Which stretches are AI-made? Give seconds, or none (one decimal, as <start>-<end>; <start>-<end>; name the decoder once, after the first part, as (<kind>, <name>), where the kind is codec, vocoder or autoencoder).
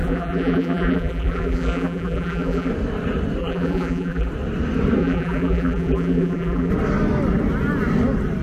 0.0-2.7 (vocoder, BigVGAN v2); 3.4-4.3; 5.0-6.7